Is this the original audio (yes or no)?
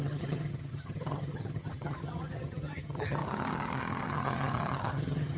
no